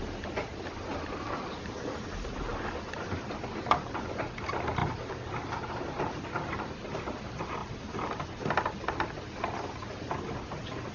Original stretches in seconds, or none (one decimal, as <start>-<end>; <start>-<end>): 0.0-10.9